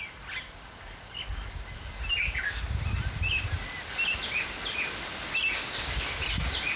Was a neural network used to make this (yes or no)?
no